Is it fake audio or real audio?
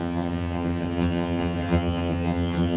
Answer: fake